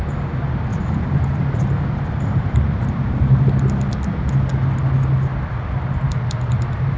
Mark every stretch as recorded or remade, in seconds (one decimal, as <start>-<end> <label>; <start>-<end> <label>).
0.0-0.7 recorded; 0.7-3.4 remade; 3.4-7.0 recorded